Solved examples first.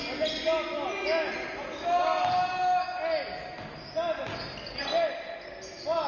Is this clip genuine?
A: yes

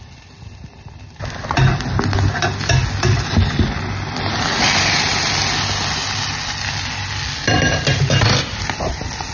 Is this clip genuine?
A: yes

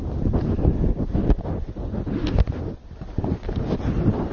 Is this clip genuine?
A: yes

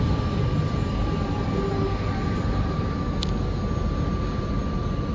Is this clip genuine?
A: yes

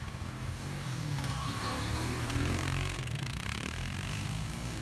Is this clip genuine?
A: no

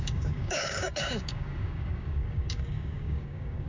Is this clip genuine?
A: no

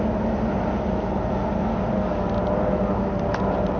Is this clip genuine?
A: yes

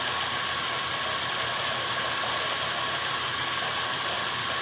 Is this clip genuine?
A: yes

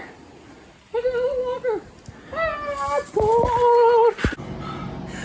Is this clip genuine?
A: yes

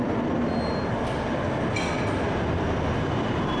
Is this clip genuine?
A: yes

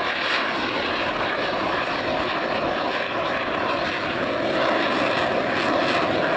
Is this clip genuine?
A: yes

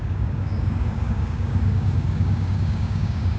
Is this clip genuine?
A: no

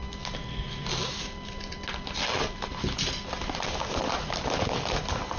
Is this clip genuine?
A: yes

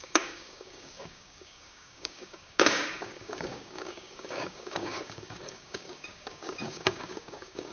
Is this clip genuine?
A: no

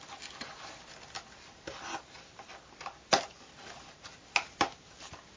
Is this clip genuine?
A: yes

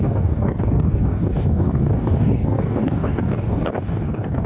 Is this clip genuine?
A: no